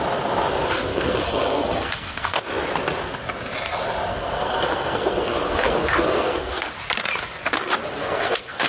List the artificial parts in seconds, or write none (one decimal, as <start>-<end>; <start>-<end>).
0.9-2.4; 4.1-6.7; 7.9-8.7